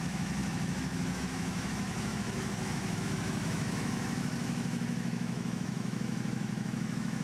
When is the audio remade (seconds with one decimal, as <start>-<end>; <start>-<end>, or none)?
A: 0.0-7.2